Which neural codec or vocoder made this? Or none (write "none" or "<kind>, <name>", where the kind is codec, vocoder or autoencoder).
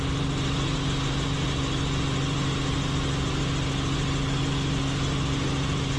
none